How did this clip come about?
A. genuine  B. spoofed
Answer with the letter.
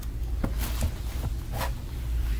A